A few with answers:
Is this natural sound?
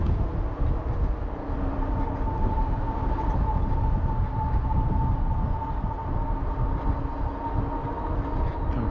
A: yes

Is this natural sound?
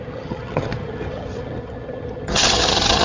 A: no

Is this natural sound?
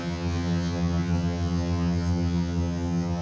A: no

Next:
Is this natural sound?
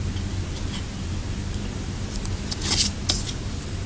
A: yes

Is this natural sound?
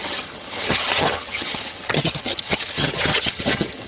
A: no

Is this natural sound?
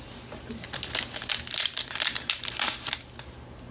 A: yes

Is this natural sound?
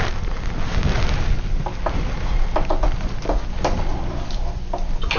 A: yes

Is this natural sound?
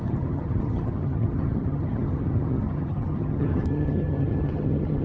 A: no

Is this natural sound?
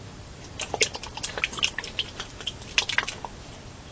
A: yes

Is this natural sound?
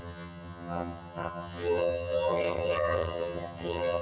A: no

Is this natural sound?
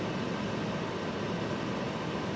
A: yes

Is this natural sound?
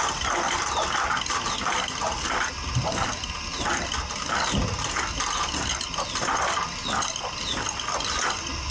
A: yes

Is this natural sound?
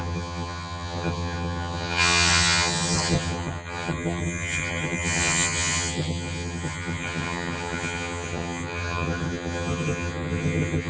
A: no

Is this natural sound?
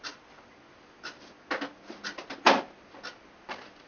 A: yes